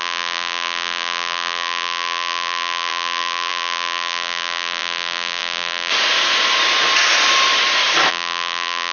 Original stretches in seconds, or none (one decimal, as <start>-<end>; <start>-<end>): 5.9-8.1